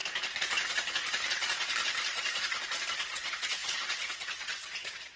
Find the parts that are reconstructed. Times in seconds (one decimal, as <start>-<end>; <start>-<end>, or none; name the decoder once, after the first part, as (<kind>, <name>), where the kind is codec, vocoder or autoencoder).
3.1-5.2 (vocoder, WaveNeXt)